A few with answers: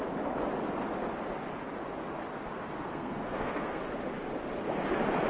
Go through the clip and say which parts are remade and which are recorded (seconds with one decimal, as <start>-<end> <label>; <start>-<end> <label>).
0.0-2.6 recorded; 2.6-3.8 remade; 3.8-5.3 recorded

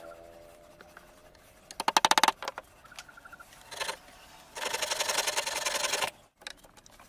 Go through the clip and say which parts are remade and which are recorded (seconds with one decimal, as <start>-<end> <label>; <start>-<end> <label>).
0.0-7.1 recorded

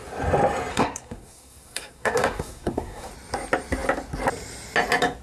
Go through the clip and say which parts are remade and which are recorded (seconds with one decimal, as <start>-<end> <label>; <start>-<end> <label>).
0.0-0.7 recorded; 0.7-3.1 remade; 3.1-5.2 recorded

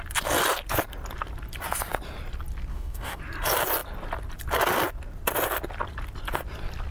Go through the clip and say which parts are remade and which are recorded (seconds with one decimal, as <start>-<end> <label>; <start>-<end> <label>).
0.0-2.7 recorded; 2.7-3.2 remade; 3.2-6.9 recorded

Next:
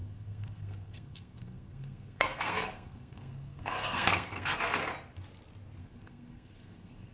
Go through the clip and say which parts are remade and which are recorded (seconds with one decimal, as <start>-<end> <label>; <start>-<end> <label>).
0.0-4.8 remade; 4.8-5.8 recorded; 5.8-7.1 remade